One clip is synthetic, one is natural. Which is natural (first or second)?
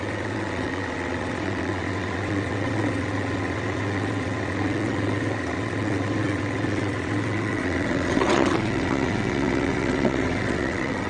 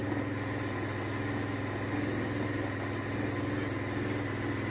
second